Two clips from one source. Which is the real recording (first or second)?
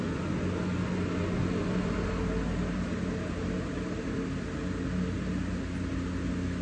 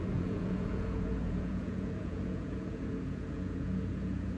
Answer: first